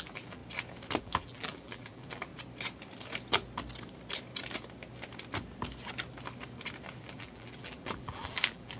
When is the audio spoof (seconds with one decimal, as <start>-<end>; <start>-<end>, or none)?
0.0-0.4; 1.0-2.3; 7.0-8.8